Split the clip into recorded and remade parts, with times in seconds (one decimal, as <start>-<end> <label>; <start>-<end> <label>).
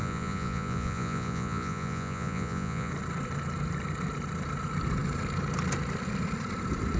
0.0-2.9 remade; 2.9-7.0 recorded